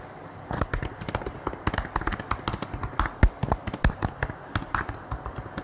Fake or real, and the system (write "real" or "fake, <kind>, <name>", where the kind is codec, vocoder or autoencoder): real